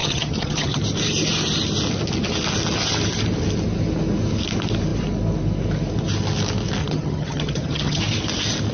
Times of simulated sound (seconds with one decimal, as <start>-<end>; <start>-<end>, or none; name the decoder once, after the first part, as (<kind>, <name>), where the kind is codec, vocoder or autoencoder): 0.0-0.8 (vocoder, HiFi-GAN); 6.8-8.0